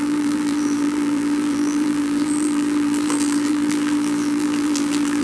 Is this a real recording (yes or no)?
no